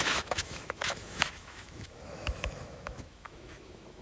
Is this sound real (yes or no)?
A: no